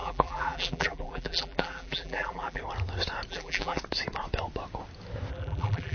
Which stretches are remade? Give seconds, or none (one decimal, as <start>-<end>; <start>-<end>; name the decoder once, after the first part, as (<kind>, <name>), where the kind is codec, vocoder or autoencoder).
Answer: 0.0-2.6 (vocoder, BigVGAN v2); 3.3-3.8; 5.3-5.9